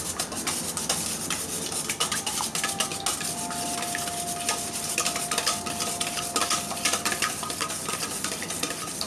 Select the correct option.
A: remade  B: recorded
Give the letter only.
B